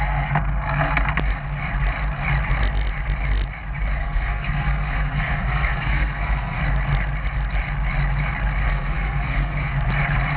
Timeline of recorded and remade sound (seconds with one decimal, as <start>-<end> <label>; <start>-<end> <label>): 0.0-4.0 recorded; 4.0-6.6 remade; 6.6-8.7 recorded; 8.7-9.7 remade; 9.7-10.4 recorded